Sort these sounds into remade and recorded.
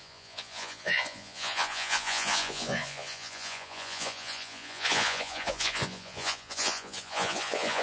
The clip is remade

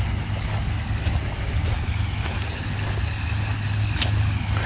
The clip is recorded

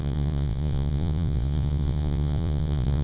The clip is remade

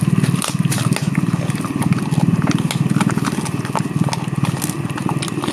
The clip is recorded